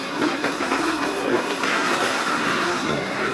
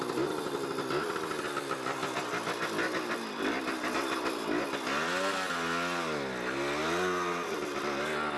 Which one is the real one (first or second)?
second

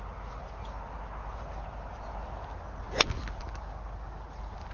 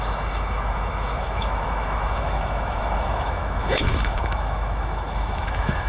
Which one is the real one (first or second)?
first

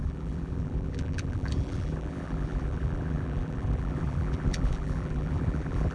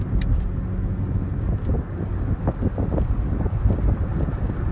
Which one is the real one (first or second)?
second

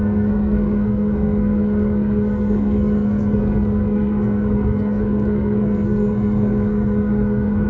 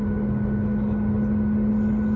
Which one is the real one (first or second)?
second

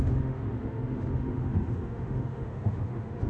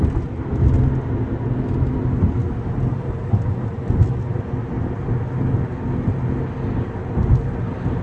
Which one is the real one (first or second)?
second